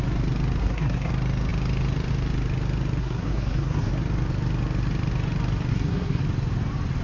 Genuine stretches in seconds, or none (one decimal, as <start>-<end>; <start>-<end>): 0.0-0.6; 1.1-3.0; 3.9-5.7; 6.2-7.0